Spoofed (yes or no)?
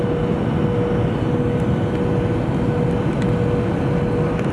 no